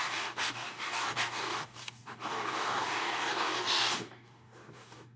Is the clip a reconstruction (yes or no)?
yes